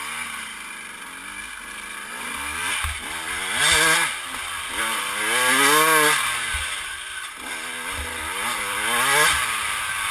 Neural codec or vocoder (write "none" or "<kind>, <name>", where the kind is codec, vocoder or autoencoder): none